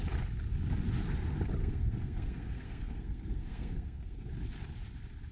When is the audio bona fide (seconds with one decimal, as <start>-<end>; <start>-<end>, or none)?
0.0-1.6; 4.3-5.3